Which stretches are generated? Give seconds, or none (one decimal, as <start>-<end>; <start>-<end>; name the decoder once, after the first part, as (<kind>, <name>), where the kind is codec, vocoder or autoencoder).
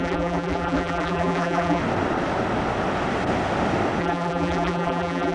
0.0-1.8 (vocoder, BigVGAN v2); 4.0-5.3